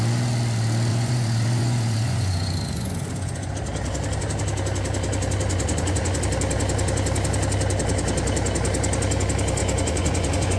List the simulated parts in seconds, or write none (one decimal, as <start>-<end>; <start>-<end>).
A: 0.9-3.5; 5.5-6.2; 9.6-10.6